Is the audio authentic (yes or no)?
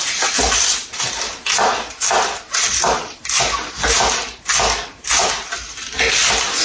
yes